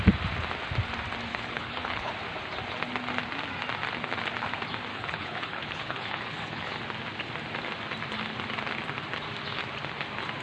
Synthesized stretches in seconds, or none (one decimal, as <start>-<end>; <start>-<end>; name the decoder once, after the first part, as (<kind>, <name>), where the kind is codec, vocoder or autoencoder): 1.3-2.1 (codec, HILCodec); 4.9-6.8